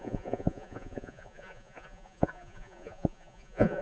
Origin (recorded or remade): remade